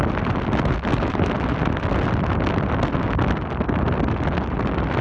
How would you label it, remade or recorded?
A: recorded